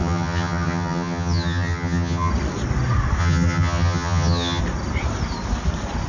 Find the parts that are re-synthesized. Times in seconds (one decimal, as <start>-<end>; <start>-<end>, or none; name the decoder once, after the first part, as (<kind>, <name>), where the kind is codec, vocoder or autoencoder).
0.0-2.3 (vocoder, HiFi-GAN); 3.2-4.6